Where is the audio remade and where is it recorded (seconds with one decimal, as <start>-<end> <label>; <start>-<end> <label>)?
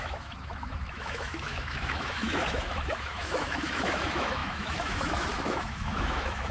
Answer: 0.0-6.5 remade